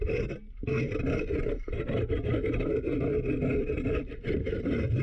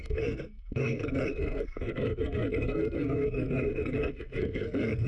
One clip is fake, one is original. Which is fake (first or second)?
second